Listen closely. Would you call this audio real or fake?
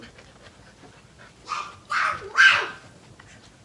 real